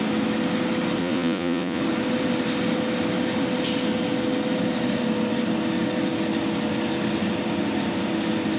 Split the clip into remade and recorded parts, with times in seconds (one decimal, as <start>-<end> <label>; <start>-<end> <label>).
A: 0.0-1.0 recorded; 1.0-1.8 remade; 1.8-8.6 recorded